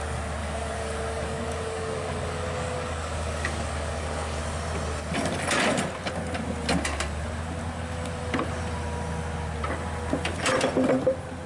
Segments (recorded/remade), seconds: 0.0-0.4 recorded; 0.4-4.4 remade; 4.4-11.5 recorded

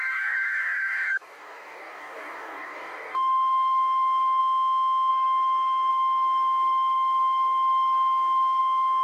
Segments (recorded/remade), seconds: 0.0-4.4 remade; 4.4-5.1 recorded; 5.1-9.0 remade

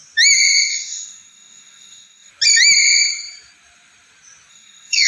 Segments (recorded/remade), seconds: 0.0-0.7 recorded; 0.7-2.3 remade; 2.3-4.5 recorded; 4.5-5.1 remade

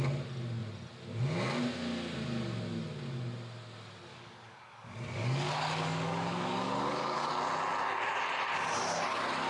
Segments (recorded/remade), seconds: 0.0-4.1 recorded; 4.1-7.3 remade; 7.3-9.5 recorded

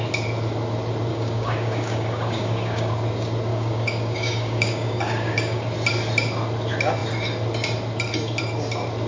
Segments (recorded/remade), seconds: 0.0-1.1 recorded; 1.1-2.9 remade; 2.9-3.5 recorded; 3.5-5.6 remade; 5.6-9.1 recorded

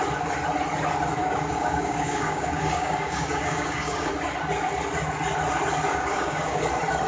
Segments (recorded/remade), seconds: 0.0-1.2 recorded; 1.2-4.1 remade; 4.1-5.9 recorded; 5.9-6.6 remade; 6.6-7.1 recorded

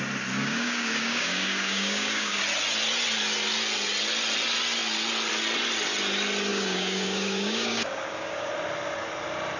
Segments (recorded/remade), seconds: 0.0-0.4 recorded; 0.4-2.4 remade; 2.4-6.5 recorded; 6.5-8.5 remade; 8.5-9.6 recorded